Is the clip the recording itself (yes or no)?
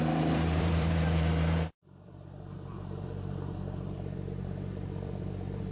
no